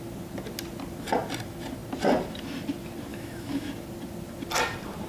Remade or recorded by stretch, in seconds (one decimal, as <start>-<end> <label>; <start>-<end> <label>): 0.0-3.1 recorded; 3.1-3.7 remade; 3.7-5.1 recorded